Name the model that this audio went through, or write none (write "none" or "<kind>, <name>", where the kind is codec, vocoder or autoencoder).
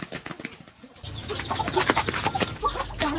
none